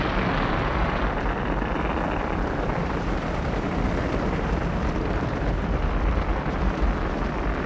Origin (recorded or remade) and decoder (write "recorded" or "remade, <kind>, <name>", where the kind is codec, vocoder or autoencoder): remade, vocoder, BigVGAN v2